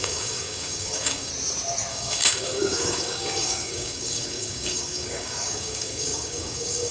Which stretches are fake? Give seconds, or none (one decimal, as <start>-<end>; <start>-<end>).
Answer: 0.0-1.3; 1.9-6.9